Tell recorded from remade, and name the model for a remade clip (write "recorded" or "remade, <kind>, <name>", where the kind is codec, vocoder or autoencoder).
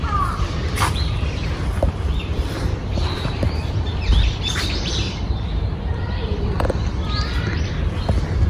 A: remade, vocoder, BigVGAN v2